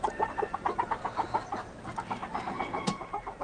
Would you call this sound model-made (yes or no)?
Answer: yes